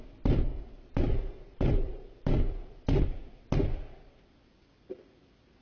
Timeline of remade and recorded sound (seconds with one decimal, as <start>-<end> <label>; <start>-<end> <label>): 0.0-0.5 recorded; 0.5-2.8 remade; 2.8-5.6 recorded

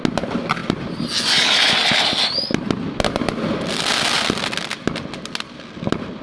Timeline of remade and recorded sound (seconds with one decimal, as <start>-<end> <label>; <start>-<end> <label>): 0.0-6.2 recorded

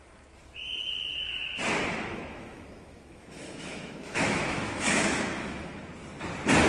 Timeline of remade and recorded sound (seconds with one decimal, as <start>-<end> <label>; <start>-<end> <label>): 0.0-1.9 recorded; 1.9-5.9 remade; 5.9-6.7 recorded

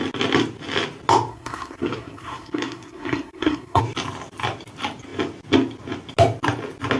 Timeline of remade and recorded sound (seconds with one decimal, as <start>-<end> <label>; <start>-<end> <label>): 0.0-1.3 recorded; 1.3-3.8 remade; 3.8-7.0 recorded

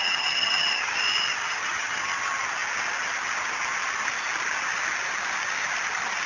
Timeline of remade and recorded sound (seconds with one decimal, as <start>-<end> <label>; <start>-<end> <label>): 0.0-0.9 remade; 0.9-1.4 recorded; 1.4-2.0 remade; 2.0-6.3 recorded

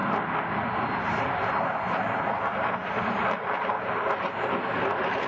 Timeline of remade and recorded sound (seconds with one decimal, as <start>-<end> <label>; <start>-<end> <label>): 0.0-5.3 recorded

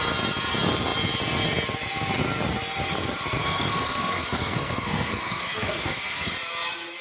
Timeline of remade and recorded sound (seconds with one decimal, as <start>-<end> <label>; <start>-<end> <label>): 0.0-3.4 recorded; 3.4-6.3 remade; 6.3-7.0 recorded